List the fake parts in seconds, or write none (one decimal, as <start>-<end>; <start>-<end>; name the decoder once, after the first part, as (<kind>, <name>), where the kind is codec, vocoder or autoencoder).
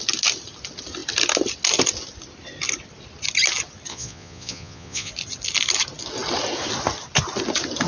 3.9-5.1 (vocoder, Vocos)